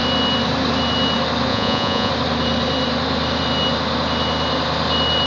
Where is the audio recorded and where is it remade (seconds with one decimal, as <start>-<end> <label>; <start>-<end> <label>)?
0.0-1.5 recorded; 1.5-2.1 remade; 2.1-5.3 recorded